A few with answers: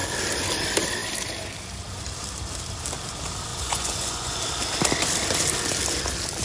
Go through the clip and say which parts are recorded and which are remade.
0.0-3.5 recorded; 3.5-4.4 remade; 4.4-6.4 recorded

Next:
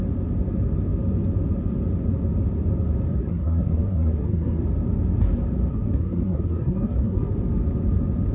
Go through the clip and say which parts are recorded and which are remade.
0.0-3.1 recorded; 3.1-4.6 remade; 4.6-5.7 recorded; 5.7-7.3 remade; 7.3-8.3 recorded

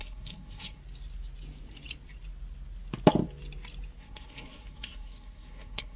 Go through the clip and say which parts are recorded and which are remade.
0.0-0.8 remade; 0.8-4.0 recorded; 4.0-6.0 remade